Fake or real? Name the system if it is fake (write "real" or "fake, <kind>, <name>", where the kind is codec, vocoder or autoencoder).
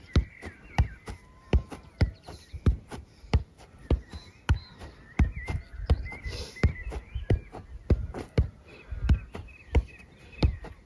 fake, vocoder, BigVGAN v2